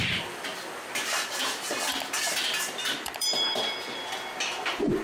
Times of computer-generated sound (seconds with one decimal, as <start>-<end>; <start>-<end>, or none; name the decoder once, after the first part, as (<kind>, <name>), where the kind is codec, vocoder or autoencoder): 0.0-0.5 (vocoder, BigVGAN v2); 2.6-5.0